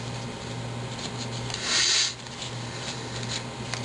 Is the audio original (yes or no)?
yes